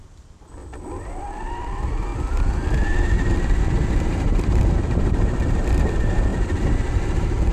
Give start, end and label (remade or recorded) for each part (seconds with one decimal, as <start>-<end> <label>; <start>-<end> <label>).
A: 0.0-0.6 remade; 0.6-1.5 recorded; 1.5-2.1 remade; 2.1-4.1 recorded; 4.1-6.3 remade; 6.3-6.9 recorded; 6.9-7.5 remade

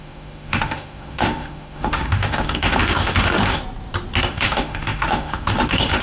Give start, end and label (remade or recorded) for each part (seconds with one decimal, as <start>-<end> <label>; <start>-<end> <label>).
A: 0.0-3.6 remade; 3.6-4.3 recorded; 4.3-6.0 remade

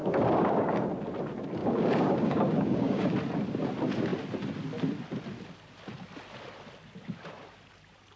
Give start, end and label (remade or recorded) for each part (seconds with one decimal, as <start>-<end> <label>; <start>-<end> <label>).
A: 0.0-0.7 remade; 0.7-1.6 recorded; 1.6-3.1 remade; 3.1-8.2 recorded

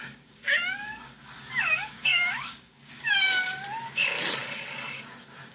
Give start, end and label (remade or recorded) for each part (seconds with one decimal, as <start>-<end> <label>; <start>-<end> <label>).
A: 0.0-3.6 remade; 3.6-5.5 recorded

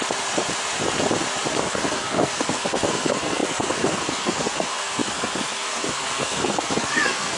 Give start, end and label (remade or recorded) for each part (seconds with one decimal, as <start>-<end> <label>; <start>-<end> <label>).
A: 0.0-1.5 recorded; 1.5-7.4 remade

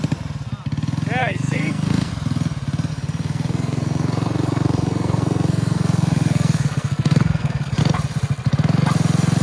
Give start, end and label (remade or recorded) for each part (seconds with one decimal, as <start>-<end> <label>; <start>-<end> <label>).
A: 0.0-1.2 recorded; 1.2-2.1 remade; 2.1-2.9 recorded; 2.9-7.8 remade; 7.8-9.4 recorded

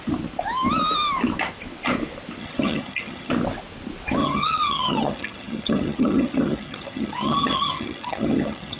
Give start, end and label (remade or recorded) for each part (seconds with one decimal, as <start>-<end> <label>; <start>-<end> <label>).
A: 0.0-2.4 recorded; 2.4-3.3 remade; 3.3-4.2 recorded; 4.2-8.8 remade